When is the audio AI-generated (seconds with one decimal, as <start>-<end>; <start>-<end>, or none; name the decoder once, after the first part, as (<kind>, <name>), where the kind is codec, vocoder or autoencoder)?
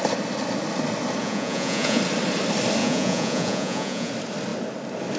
1.2-2.0 (vocoder, Vocos); 2.8-4.1